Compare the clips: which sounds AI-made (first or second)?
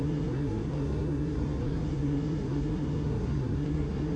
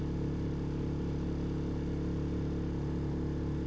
first